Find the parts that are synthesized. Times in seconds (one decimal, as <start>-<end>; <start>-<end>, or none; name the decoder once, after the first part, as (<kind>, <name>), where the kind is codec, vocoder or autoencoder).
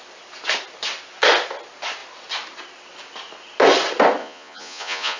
4.2-5.2 (vocoder, Vocos)